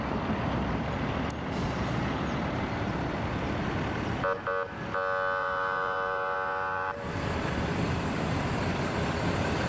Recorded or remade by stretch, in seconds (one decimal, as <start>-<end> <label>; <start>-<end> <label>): 0.0-5.4 recorded; 5.4-7.5 remade; 7.5-9.7 recorded